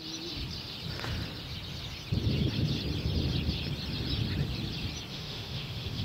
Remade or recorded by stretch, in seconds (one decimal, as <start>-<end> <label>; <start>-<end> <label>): 0.0-5.1 recorded; 5.1-6.0 remade